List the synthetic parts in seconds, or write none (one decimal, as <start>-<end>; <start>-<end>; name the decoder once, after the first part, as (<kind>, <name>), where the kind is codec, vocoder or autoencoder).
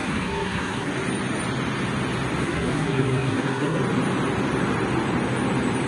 0.0-0.9 (codec, SNAC); 2.4-3.8